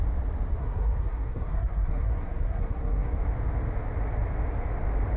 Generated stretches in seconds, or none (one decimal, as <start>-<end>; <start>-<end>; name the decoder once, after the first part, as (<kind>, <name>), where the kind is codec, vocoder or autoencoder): 0.6-3.2 (codec, SNAC)